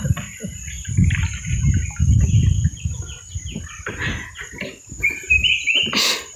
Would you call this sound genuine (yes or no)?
yes